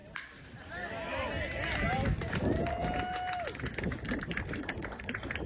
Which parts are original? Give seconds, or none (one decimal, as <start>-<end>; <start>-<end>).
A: 0.0-5.5